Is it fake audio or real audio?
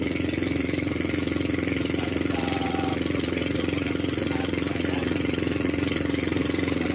fake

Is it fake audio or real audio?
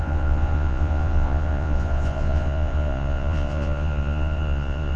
fake